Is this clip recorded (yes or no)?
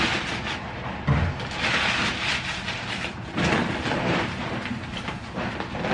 yes